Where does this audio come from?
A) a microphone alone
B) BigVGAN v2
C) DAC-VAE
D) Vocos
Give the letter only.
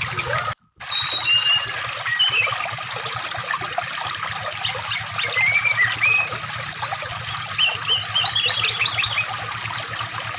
A